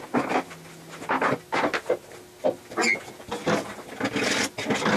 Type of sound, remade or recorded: recorded